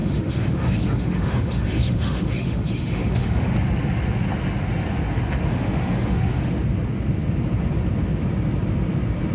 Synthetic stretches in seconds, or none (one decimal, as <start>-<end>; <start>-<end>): 0.0-3.5; 5.5-6.5